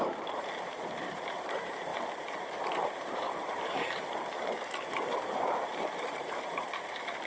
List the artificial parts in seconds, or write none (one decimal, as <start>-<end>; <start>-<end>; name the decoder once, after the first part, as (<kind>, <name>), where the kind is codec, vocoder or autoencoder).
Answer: 0.0-7.3 (vocoder, BigVGAN v2)